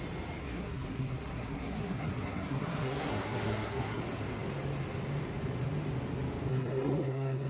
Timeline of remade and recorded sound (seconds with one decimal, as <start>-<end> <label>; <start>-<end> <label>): 0.0-0.4 recorded; 0.4-4.0 remade; 4.0-6.5 recorded; 6.5-7.5 remade